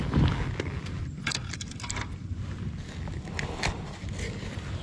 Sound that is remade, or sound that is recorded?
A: recorded